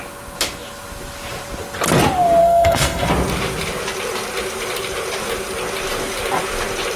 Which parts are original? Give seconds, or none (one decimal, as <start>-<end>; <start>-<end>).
0.0-2.4; 3.1-7.0